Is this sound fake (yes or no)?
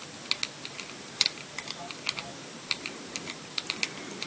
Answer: no